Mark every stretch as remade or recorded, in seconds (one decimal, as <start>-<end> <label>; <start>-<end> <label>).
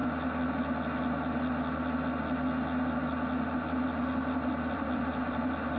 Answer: 0.0-3.5 recorded; 3.5-5.8 remade